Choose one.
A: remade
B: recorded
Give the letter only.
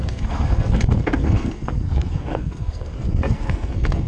A